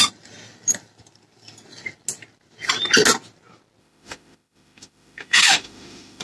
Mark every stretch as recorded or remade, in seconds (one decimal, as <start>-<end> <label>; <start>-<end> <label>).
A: 0.0-3.8 recorded; 3.8-6.2 remade